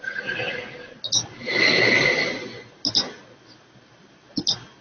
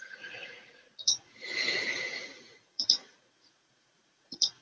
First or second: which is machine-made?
second